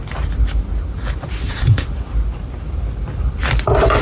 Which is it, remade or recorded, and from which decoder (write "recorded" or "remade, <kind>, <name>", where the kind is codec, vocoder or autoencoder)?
recorded